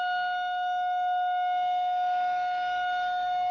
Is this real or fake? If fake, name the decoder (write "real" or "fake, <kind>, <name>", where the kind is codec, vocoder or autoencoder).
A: fake, autoencoder, DAC-VAE